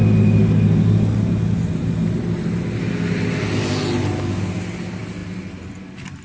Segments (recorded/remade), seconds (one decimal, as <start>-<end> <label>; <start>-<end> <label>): 0.0-6.2 recorded

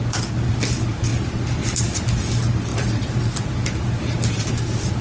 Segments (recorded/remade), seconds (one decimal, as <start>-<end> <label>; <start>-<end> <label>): 0.0-5.0 recorded

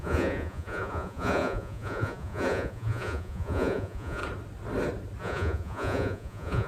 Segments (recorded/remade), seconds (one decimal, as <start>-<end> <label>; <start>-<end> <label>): 0.0-4.2 remade; 4.2-5.2 recorded; 5.2-6.7 remade

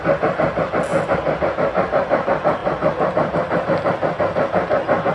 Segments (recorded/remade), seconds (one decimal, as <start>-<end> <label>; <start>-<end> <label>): 0.0-5.1 recorded

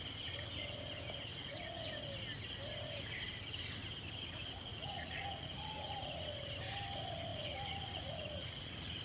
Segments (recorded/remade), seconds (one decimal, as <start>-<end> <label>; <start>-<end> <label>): 0.0-1.3 recorded; 1.3-1.9 remade; 1.9-4.7 recorded; 4.7-6.3 remade; 6.3-7.3 recorded; 7.3-9.0 remade

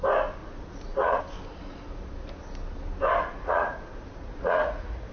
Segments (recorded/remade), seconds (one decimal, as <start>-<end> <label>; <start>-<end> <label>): 0.0-0.4 recorded; 0.4-1.2 remade; 1.2-3.2 recorded; 3.2-5.1 remade

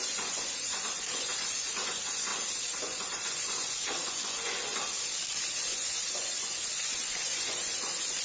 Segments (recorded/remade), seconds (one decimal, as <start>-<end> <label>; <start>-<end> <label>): 0.0-2.3 remade; 2.3-2.8 recorded; 2.8-4.6 remade; 4.6-5.7 recorded; 5.7-8.2 remade

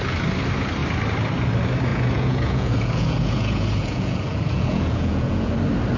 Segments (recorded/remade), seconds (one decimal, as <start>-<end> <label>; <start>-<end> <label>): 0.0-1.9 recorded; 1.9-5.5 remade; 5.5-6.0 recorded